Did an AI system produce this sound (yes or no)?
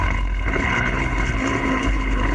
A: yes